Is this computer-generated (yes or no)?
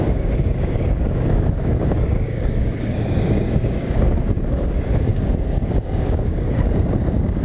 yes